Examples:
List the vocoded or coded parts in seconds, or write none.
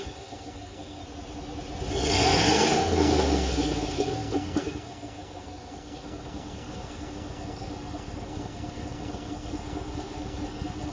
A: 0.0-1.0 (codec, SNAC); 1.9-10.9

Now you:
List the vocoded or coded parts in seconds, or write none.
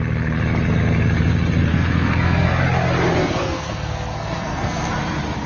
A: 1.7-2.6 (codec, SNAC); 3.2-4.9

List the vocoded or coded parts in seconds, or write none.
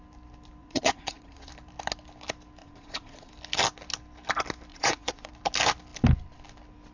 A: 0.6-1.5 (vocoder, Vocos); 2.6-3.3; 4.7-5.3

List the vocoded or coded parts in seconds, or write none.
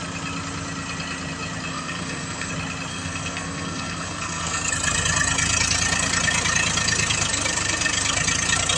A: 1.7-2.5 (codec, SNAC); 2.9-4.7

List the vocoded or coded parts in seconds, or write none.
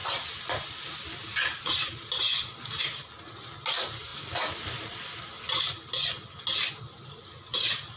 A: none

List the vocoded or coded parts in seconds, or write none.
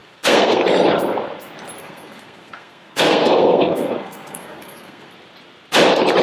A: 0.0-0.6 (codec, SNAC); 1.8-5.1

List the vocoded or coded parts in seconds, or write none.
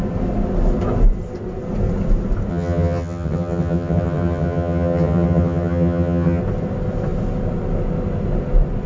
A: 2.5-6.4 (vocoder, HiFi-GAN)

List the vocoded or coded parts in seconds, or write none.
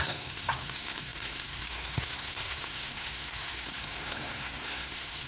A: 0.0-5.3 (codec, SNAC)